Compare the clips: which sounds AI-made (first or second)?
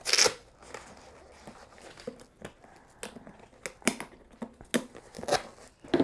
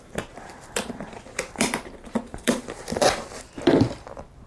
second